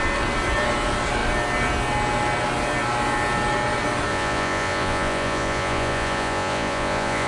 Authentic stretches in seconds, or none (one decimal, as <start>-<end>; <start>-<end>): 0.0-4.1